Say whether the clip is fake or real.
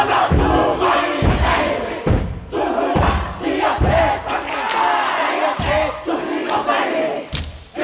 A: real